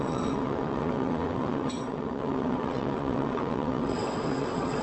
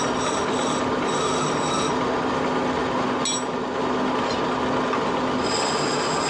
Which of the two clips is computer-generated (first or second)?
first